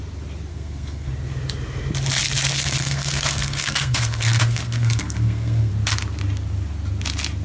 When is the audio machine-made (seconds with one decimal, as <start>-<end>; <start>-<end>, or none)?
0.5-1.1; 2.5-5.7